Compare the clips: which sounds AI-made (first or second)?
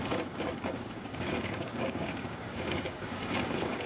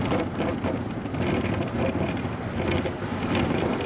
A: first